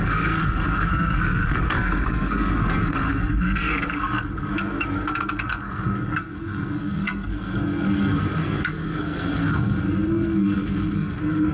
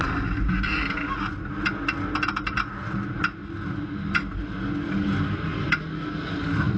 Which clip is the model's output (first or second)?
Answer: first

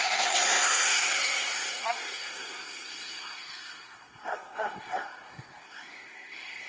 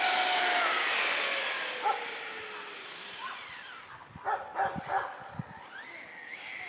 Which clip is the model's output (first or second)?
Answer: first